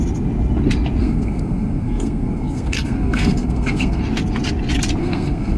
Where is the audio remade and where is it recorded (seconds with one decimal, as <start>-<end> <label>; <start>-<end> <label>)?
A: 0.0-1.0 recorded; 1.0-4.0 remade; 4.0-5.0 recorded; 5.0-5.6 remade